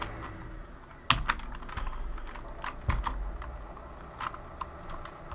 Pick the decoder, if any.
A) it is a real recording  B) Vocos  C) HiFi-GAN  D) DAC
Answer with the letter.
A